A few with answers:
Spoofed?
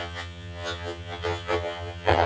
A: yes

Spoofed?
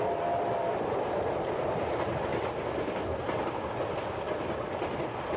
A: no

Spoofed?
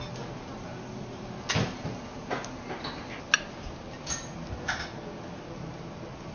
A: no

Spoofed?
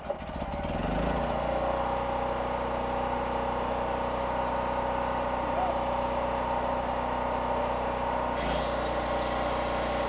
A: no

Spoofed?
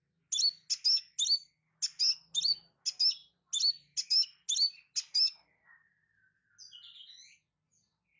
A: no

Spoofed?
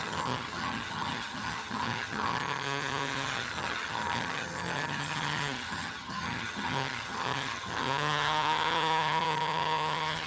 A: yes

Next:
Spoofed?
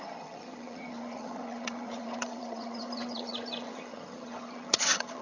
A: yes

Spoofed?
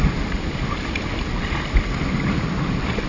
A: no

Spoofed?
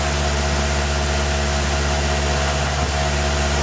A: no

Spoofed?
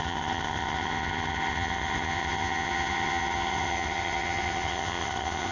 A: yes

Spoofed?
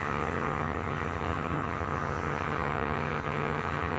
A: yes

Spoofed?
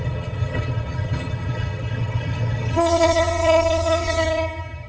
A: yes